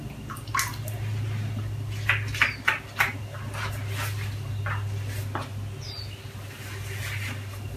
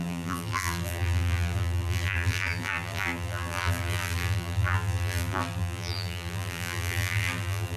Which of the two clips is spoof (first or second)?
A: second